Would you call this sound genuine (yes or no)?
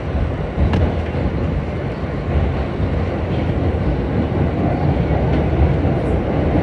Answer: yes